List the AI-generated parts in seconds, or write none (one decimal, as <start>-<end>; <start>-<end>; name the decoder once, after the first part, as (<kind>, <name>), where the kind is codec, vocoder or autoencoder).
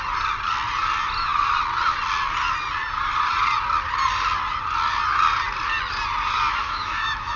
6.6-7.4 (autoencoder, DAC-VAE)